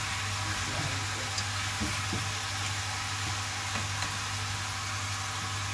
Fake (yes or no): no